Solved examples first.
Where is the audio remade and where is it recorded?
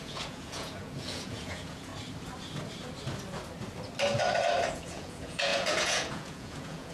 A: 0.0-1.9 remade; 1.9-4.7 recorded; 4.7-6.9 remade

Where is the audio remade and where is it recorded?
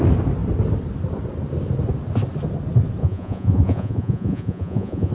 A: 0.0-3.0 recorded; 3.0-5.1 remade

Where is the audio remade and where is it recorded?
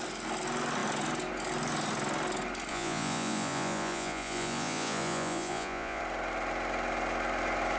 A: 0.0-2.7 recorded; 2.7-6.0 remade; 6.0-7.8 recorded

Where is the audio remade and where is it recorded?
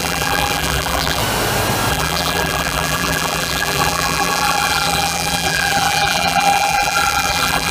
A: 0.0-1.2 remade; 1.2-1.9 recorded; 1.9-7.7 remade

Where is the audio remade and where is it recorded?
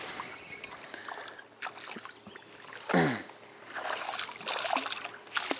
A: 0.0-5.6 recorded